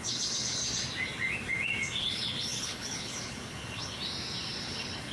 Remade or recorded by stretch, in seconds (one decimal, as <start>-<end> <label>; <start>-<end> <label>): 0.0-0.6 remade; 0.6-2.0 recorded; 2.0-3.9 remade; 3.9-4.6 recorded; 4.6-5.1 remade